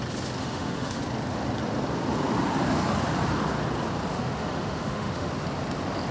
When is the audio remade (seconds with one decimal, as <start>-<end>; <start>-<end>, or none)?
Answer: 0.4-1.0; 4.1-5.3